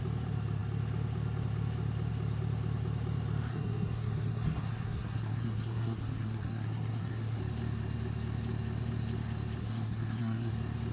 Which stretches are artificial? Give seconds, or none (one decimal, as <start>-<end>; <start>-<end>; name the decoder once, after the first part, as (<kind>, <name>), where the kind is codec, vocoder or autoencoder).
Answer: 3.5-7.4 (codec, SNAC); 9.6-10.5